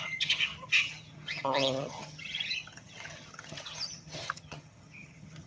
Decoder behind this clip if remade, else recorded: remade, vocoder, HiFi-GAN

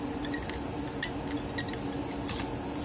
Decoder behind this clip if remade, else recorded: recorded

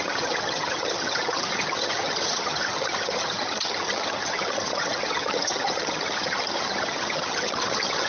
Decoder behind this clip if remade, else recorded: remade, vocoder, HiFi-GAN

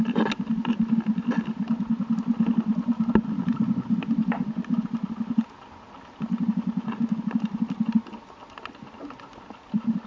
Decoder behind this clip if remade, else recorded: recorded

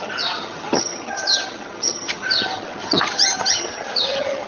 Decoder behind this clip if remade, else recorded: remade, vocoder, HiFi-GAN